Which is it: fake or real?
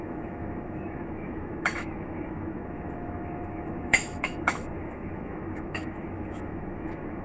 fake